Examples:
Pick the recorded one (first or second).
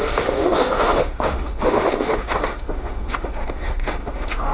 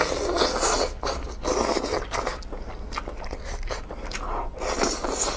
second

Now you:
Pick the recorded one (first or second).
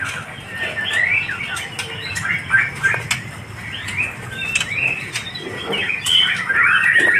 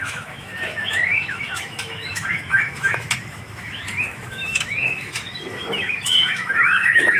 first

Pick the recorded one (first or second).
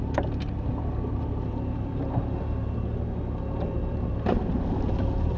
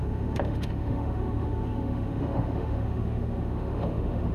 first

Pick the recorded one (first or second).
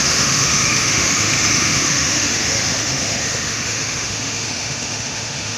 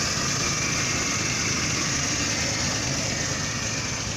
second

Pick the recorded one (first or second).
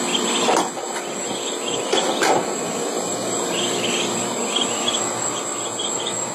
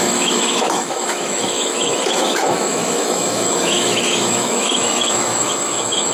first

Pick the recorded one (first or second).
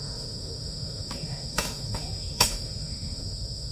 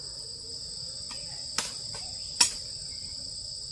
second